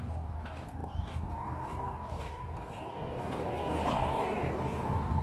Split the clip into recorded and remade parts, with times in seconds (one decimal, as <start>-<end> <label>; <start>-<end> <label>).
0.0-5.2 remade